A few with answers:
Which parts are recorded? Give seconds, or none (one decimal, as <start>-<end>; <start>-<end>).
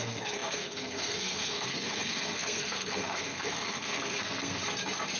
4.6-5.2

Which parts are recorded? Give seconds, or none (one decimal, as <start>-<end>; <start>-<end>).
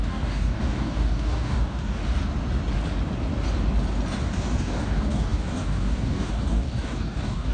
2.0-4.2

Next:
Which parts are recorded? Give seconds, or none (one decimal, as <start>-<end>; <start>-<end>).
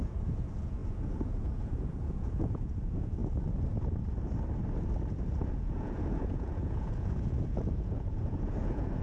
3.2-5.5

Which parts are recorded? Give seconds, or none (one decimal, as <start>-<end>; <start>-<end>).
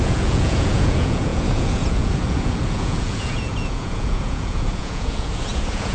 none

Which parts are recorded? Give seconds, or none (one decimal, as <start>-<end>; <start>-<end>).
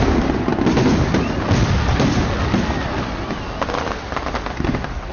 0.0-5.1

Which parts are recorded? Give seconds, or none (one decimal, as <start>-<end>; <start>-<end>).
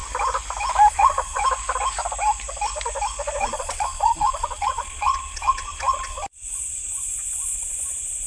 0.0-0.9; 1.4-3.4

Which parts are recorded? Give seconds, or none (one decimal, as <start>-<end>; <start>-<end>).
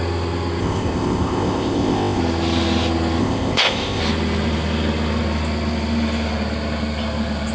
0.0-0.6; 2.2-3.2; 4.0-7.5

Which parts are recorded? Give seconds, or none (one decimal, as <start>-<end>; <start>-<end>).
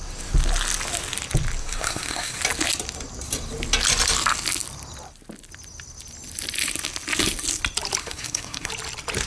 0.0-1.6; 2.4-8.0; 8.7-9.3